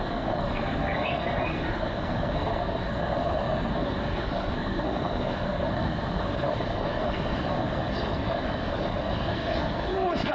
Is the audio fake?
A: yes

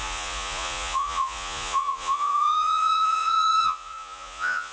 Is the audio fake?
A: yes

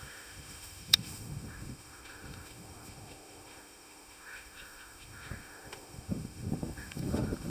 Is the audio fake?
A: yes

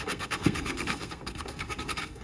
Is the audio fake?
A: yes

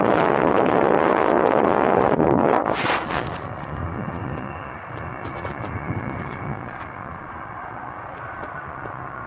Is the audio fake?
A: yes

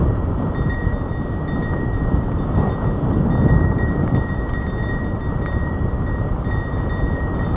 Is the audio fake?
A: yes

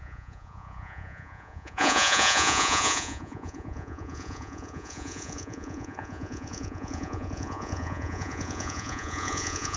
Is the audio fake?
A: yes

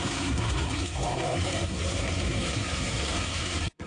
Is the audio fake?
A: yes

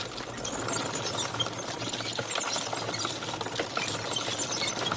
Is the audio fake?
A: no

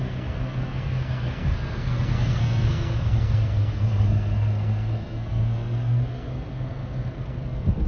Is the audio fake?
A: yes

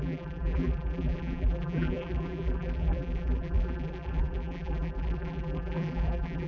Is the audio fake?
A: yes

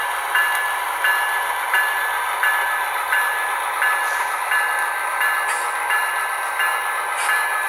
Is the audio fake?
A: no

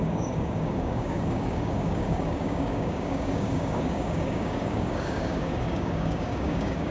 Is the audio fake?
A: yes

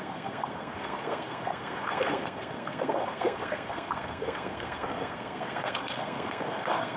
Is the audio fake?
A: yes